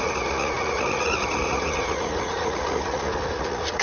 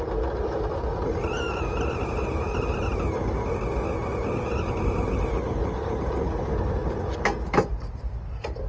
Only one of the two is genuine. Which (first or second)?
second